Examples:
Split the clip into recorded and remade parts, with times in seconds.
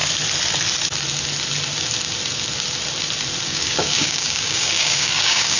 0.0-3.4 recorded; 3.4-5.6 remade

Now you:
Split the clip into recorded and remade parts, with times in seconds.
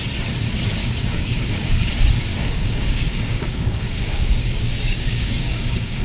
0.0-0.8 recorded; 0.8-1.9 remade; 1.9-2.3 recorded; 2.3-6.0 remade